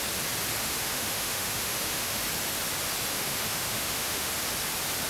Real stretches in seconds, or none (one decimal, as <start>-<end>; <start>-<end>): 0.0-0.6; 2.2-3.1; 4.3-5.1